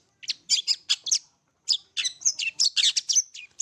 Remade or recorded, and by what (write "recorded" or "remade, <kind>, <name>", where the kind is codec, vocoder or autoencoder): recorded